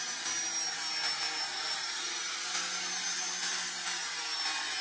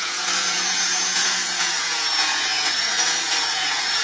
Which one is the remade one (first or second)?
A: second